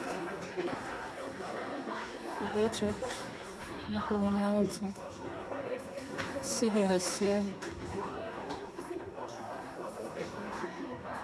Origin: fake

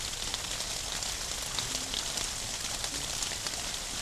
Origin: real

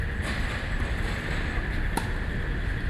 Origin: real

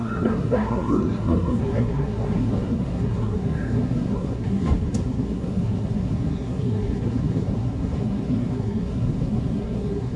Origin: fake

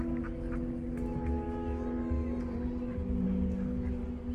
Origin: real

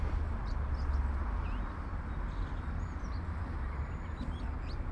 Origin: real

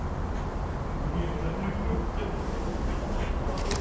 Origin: real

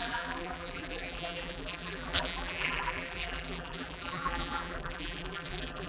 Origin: fake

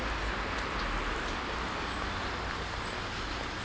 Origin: real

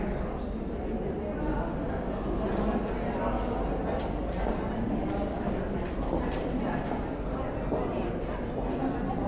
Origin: real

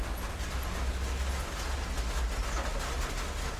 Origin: real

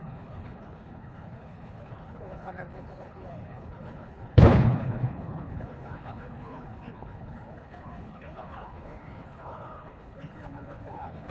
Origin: fake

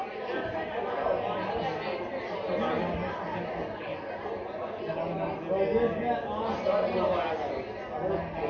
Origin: real